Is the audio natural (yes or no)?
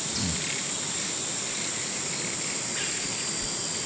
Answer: yes